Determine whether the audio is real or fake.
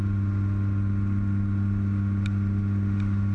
real